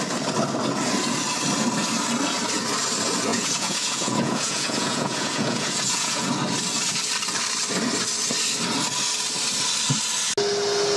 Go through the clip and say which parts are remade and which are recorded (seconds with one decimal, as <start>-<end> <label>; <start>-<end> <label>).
0.0-3.3 recorded; 3.3-6.3 remade; 6.3-11.0 recorded